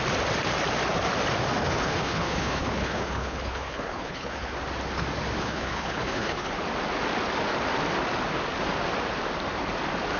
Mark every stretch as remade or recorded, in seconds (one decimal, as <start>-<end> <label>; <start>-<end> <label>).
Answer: 0.0-1.6 recorded; 1.6-4.5 remade; 4.5-5.4 recorded; 5.4-6.5 remade; 6.5-10.2 recorded

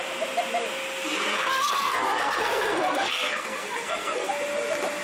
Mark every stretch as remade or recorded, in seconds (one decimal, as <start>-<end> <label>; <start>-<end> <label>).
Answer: 0.0-1.3 recorded; 1.3-4.3 remade; 4.3-5.0 recorded